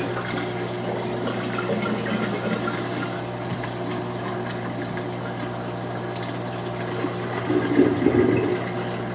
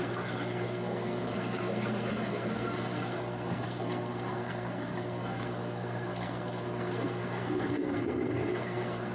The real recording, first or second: first